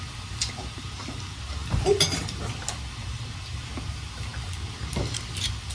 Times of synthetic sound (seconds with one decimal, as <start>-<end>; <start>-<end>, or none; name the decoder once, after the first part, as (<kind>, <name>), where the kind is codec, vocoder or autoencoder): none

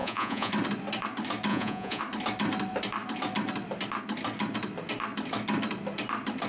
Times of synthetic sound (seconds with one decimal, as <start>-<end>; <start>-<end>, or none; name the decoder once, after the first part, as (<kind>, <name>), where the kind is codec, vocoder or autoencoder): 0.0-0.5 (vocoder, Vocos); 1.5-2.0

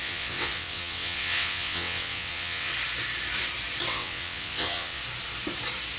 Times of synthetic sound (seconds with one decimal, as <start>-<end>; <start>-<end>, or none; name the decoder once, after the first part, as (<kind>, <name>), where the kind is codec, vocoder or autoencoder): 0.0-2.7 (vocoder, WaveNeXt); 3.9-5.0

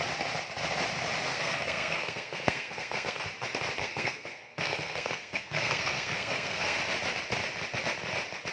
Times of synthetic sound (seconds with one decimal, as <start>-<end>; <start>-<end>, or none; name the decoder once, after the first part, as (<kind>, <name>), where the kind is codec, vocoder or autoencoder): 1.3-3.2 (codec, SNAC); 3.8-6.8

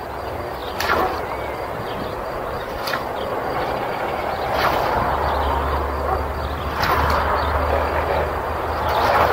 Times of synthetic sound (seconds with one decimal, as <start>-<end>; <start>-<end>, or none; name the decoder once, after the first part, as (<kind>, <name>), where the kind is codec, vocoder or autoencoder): none

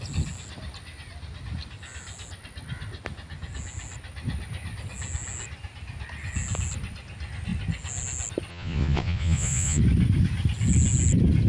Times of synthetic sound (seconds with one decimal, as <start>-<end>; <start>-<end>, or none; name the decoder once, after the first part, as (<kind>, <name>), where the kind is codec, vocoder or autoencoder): 8.5-9.8 (vocoder, Vocos)

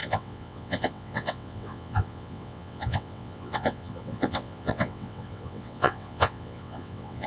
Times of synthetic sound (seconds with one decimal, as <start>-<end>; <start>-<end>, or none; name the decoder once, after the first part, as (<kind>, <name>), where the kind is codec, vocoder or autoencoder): 0.0-7.3 (vocoder, WaveNeXt)

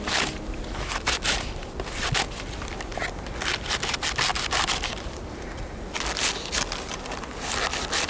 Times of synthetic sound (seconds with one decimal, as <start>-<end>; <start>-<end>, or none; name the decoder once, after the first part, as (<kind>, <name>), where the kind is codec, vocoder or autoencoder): none